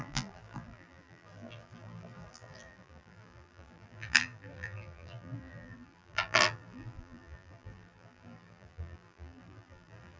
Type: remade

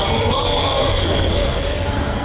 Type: remade